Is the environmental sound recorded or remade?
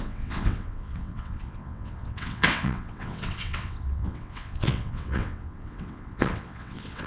remade